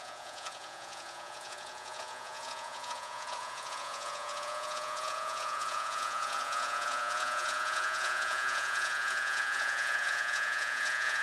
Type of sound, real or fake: fake